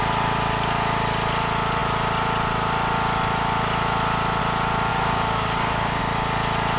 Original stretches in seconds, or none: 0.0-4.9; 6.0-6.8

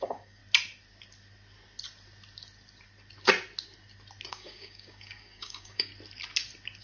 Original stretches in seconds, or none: 0.4-4.3; 5.9-6.8

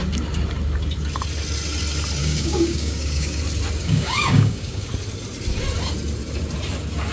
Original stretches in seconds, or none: 0.0-2.2; 3.4-3.8; 4.9-7.1

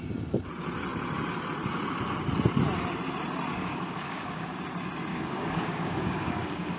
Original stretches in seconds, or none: 0.0-3.5; 4.5-5.1